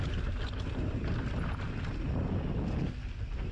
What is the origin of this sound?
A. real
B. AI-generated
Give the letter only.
A